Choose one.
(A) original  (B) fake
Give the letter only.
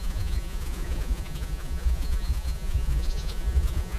B